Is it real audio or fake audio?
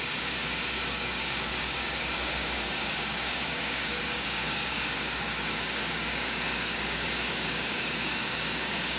fake